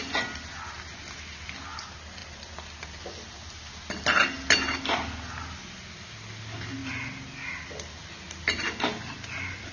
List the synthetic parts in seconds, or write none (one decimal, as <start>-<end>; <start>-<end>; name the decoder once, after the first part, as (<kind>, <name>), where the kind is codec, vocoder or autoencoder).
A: none